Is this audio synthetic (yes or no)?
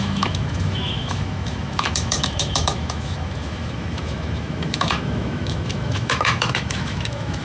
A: yes